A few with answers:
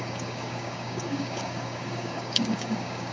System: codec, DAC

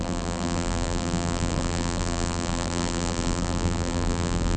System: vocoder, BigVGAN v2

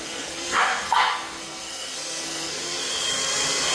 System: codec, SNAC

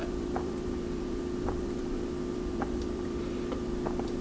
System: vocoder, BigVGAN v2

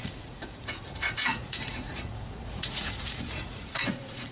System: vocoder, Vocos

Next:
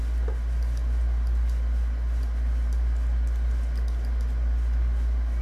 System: none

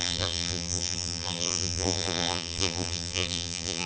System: vocoder, BigVGAN v2